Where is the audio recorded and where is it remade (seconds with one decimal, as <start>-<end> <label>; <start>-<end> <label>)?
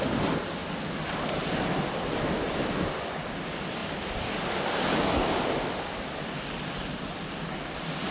0.0-8.1 recorded